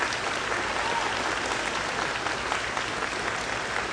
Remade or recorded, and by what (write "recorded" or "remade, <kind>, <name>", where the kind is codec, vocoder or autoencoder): recorded